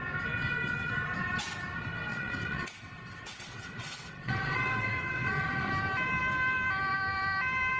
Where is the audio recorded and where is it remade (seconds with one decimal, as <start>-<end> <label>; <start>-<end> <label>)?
0.0-2.1 recorded; 2.1-5.7 remade; 5.7-7.8 recorded